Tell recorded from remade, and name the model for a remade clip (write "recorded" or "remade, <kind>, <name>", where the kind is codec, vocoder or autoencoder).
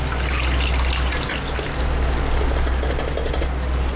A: recorded